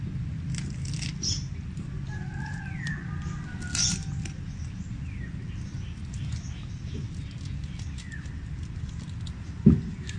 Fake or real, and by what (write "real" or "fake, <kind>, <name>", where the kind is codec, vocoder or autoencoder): real